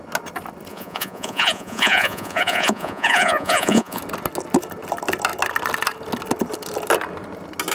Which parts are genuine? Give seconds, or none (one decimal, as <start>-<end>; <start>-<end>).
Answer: 0.0-0.7; 4.0-7.7